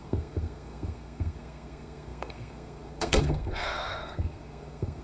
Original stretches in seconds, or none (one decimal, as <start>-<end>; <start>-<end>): none